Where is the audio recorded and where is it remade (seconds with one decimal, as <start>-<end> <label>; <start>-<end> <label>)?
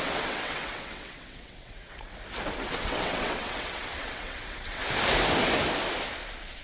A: 0.0-2.1 remade; 2.1-2.7 recorded; 2.7-4.8 remade; 4.8-6.6 recorded